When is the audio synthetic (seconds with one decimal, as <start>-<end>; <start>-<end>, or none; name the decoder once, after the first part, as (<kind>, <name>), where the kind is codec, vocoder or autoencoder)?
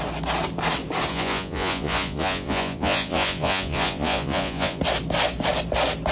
1.1-4.8 (vocoder, Vocos)